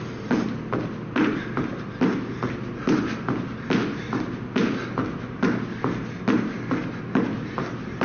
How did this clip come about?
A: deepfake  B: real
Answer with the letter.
B